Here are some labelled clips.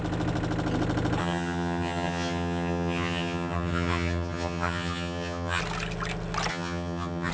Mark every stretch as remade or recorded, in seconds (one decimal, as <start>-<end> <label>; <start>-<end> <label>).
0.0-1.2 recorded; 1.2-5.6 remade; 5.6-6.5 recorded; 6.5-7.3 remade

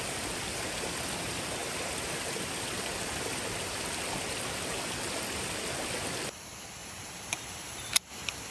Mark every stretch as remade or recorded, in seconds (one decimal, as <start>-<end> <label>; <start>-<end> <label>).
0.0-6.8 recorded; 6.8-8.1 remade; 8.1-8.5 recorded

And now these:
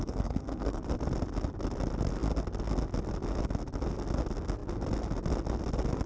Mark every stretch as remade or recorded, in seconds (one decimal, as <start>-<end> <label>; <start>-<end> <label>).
0.0-0.8 remade; 0.8-6.1 recorded